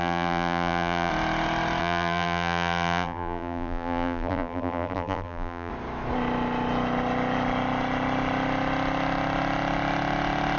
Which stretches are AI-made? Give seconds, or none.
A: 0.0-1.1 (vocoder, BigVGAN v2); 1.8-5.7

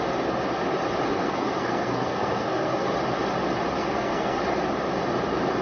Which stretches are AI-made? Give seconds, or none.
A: 1.1-2.9 (codec, SNAC); 3.8-4.4

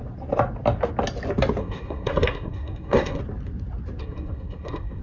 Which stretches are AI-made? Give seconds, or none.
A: 1.6-3.2 (codec, SNAC); 4.0-5.0

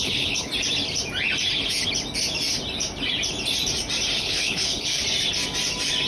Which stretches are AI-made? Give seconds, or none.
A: 0.0-0.5 (codec, HILCodec); 4.2-5.0

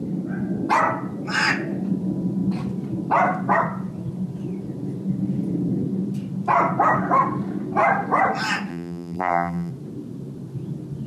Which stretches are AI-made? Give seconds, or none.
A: 8.7-9.7 (vocoder, BigVGAN v2)